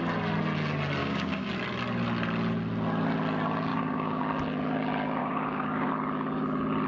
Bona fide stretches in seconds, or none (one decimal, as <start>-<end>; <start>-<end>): 0.0-1.0; 1.5-3.7; 4.2-5.2; 5.9-6.9